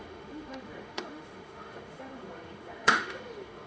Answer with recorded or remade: remade